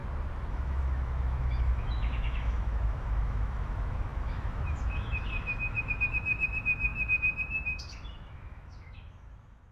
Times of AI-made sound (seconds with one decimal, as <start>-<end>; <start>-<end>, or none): 0.5-9.7